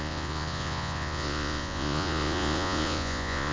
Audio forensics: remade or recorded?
remade